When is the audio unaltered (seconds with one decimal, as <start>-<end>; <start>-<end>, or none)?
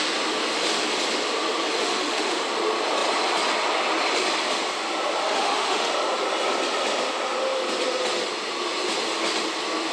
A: 0.0-1.8; 2.4-5.2; 5.9-9.9